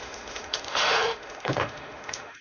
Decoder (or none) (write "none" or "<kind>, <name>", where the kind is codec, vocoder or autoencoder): autoencoder, DAC-VAE